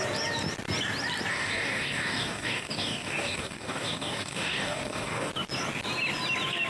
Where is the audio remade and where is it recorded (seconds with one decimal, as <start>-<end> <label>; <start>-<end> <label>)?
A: 0.0-1.3 recorded; 1.3-5.3 remade; 5.3-6.7 recorded